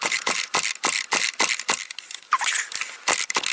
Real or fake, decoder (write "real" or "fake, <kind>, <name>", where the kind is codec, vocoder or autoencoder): fake, vocoder, BigVGAN v2